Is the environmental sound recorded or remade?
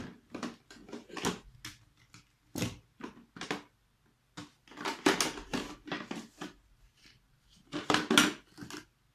recorded